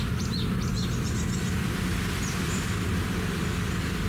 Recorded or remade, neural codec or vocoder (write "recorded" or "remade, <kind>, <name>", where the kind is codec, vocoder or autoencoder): recorded